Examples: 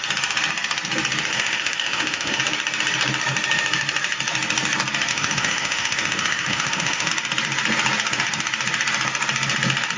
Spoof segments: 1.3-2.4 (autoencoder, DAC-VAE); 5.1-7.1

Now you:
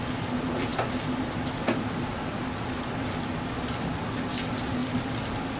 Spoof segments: none